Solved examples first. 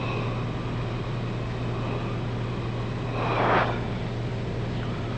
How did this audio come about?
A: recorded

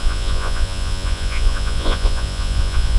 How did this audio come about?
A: remade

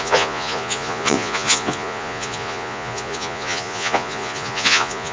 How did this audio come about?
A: remade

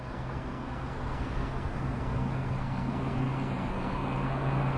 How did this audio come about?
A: remade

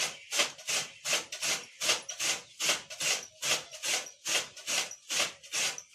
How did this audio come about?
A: recorded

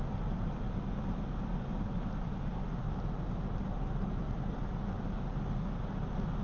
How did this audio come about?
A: recorded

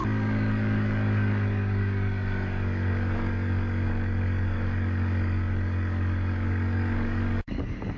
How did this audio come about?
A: remade